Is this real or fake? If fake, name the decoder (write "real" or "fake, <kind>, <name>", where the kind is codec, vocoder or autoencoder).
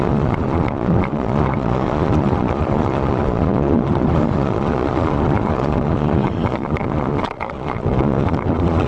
fake, vocoder, Vocos